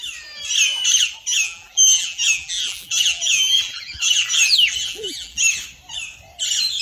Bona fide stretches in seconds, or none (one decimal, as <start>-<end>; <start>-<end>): 0.0-1.3; 5.4-6.8